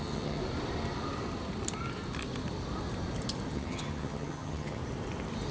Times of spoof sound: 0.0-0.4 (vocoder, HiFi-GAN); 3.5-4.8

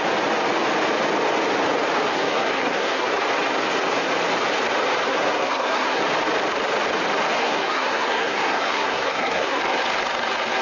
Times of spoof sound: 2.1-3.1 (codec, SNAC); 5.1-6.0; 7.4-9.6

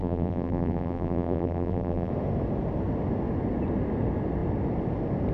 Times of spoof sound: 0.0-2.1 (vocoder, BigVGAN v2)

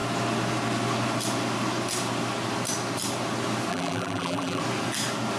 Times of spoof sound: 3.7-4.6 (vocoder, BigVGAN v2)